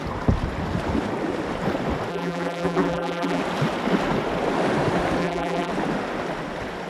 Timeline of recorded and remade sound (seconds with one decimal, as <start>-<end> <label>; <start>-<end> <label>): 0.0-2.1 recorded; 2.1-3.4 remade; 3.4-5.2 recorded; 5.2-5.7 remade; 5.7-6.9 recorded

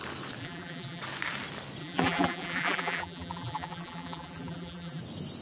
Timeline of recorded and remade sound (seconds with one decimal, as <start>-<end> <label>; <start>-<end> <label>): 0.0-0.4 recorded; 0.4-1.0 remade; 1.0-1.8 recorded; 1.8-5.0 remade; 5.0-5.4 recorded

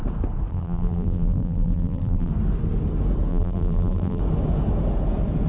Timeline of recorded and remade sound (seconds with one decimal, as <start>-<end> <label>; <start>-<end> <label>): 0.0-0.5 recorded; 0.5-2.3 remade; 2.3-3.3 recorded; 3.3-4.2 remade; 4.2-5.5 recorded

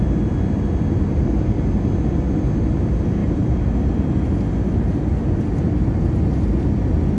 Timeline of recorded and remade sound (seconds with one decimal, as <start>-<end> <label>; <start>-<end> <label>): 0.0-3.2 recorded; 3.2-3.9 remade; 3.9-7.2 recorded

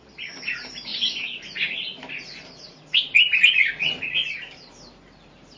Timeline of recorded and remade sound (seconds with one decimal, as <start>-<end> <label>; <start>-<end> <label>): 0.0-0.9 recorded; 0.9-3.7 remade; 3.7-4.2 recorded; 4.2-4.7 remade; 4.7-5.6 recorded

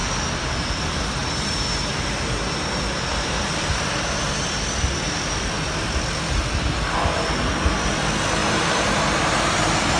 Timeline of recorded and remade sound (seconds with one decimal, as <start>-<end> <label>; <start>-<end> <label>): 0.0-1.2 recorded; 1.2-1.9 remade; 1.9-8.4 recorded; 8.4-10.0 remade

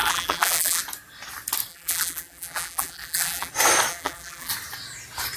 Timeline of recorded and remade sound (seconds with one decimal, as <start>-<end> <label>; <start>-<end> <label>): 0.0-0.8 remade; 0.8-1.7 recorded; 1.7-3.5 remade; 3.5-3.9 recorded; 3.9-4.5 remade; 4.5-5.4 recorded

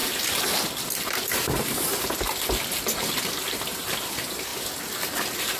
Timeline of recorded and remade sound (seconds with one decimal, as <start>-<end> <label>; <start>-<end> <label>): 0.0-1.0 recorded; 1.0-1.9 remade; 1.9-3.5 recorded; 3.5-4.5 remade; 4.5-5.6 recorded